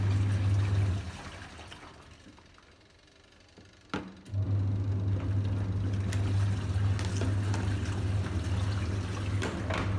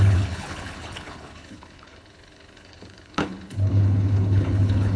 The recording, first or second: first